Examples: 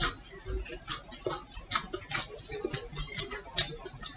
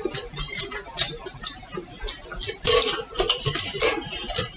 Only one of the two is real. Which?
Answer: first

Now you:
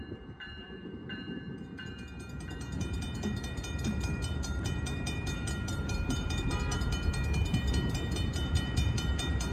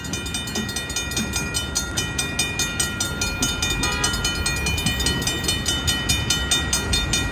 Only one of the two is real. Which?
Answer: second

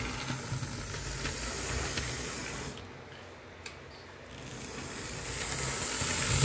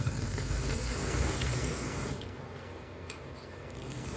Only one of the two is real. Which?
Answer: first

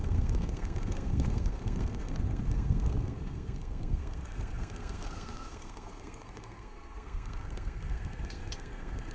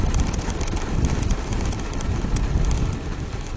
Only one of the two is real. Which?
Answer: second